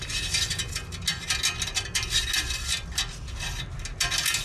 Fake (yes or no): no